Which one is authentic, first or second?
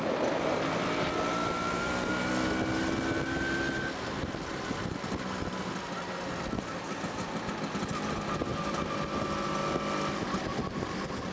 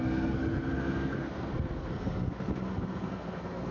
first